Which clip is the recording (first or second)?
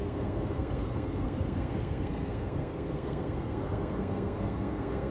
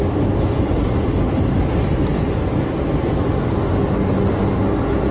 second